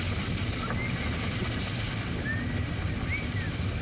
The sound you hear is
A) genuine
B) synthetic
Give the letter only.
A